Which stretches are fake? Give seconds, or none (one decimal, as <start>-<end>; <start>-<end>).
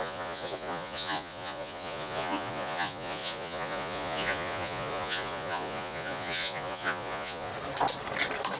0.0-7.5